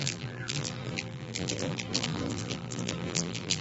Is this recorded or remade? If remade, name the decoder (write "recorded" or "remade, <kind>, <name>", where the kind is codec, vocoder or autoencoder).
remade, vocoder, BigVGAN v2